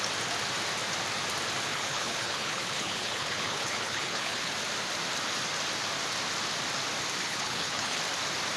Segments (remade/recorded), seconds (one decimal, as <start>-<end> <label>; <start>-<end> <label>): 0.0-1.7 recorded; 1.7-4.5 remade; 4.5-7.2 recorded; 7.2-8.0 remade; 8.0-8.6 recorded